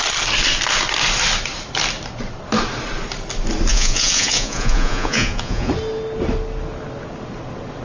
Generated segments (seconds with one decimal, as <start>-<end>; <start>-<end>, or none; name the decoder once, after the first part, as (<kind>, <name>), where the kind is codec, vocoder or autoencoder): 3.7-5.7 (vocoder, Vocos)